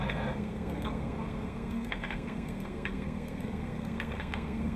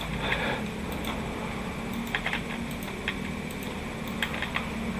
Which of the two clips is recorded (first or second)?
second